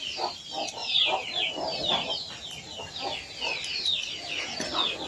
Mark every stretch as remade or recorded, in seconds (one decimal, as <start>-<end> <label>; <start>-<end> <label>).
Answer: 0.0-0.8 recorded; 0.8-2.3 remade; 2.3-3.5 recorded; 3.5-4.5 remade; 4.5-5.1 recorded